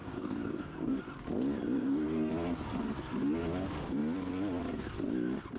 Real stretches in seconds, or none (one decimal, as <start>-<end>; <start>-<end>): 1.0-1.8; 2.3-5.6